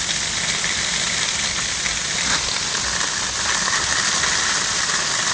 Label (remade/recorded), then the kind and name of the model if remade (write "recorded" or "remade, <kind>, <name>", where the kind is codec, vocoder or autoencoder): recorded